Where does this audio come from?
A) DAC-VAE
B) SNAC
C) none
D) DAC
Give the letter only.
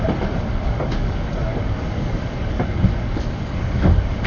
D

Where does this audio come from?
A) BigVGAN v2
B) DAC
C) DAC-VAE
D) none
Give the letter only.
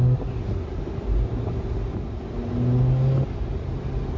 D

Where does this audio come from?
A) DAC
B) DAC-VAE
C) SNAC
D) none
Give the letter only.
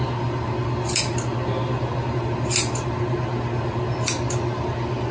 D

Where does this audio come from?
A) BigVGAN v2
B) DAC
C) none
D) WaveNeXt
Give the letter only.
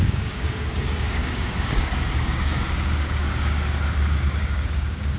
B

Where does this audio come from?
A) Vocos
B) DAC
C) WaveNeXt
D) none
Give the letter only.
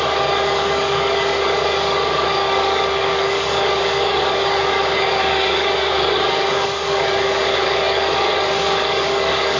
B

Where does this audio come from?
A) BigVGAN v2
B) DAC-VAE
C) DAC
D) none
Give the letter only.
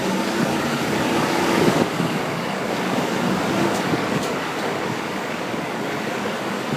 C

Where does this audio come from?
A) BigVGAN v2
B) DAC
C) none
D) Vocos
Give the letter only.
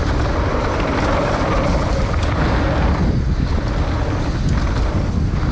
C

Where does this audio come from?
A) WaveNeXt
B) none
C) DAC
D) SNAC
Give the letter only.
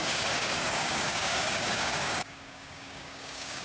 C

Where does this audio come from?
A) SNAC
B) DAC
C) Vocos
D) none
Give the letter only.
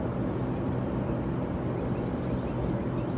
D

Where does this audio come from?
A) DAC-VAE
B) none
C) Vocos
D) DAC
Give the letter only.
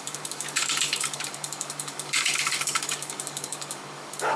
D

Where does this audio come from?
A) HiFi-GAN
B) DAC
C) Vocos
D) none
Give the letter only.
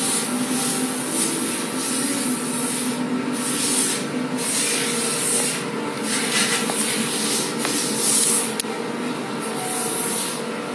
D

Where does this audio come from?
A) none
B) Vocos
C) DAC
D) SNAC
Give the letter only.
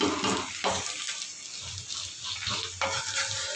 A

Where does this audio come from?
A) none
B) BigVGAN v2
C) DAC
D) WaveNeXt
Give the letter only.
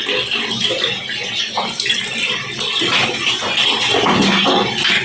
A